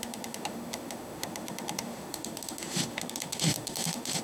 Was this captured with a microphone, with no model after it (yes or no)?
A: no